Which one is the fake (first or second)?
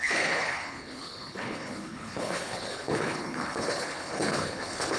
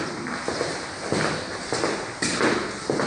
first